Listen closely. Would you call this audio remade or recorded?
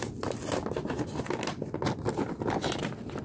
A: recorded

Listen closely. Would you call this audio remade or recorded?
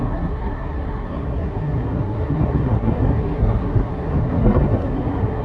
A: remade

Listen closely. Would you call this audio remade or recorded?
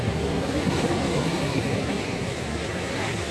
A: remade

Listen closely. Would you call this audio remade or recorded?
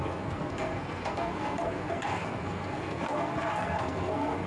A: remade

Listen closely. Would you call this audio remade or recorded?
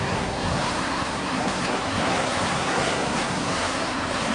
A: remade